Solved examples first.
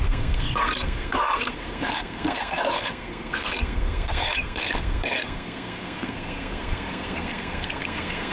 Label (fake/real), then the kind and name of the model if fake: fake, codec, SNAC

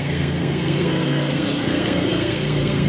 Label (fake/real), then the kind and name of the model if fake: fake, codec, SNAC